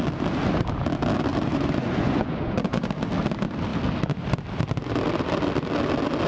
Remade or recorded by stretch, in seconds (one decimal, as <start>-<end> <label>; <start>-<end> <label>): 0.0-1.3 recorded; 1.3-2.9 remade; 2.9-6.3 recorded